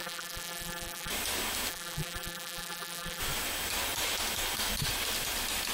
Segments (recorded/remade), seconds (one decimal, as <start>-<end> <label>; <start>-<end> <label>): 0.0-1.1 remade; 1.1-1.7 recorded; 1.7-3.2 remade; 3.2-5.7 recorded